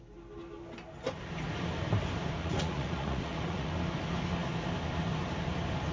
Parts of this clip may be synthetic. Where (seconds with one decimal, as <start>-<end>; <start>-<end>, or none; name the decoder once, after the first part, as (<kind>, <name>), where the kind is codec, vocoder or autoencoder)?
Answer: 2.4-3.7 (vocoder, Vocos)